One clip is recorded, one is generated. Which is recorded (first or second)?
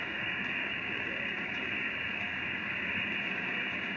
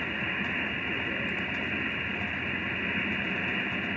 second